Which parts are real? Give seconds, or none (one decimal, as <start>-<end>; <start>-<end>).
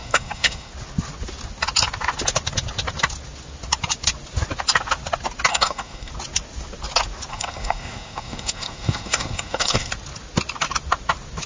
0.7-5.5; 6.1-7.3; 9.9-11.5